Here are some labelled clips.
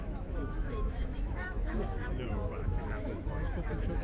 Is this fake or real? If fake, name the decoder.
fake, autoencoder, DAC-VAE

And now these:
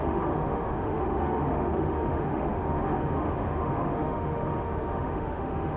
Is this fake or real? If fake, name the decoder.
fake, autoencoder, DAC-VAE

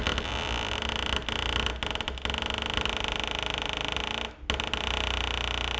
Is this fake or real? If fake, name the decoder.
real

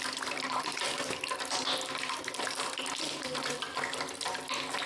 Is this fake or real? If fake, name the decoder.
real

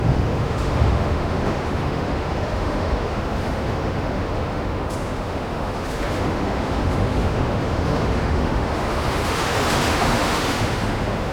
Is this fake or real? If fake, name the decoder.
fake, autoencoder, DAC-VAE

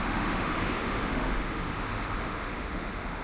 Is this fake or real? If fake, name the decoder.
fake, autoencoder, DAC-VAE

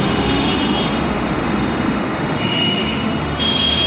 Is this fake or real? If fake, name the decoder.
fake, autoencoder, DAC-VAE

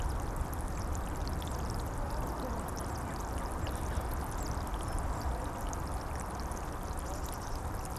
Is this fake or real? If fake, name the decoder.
real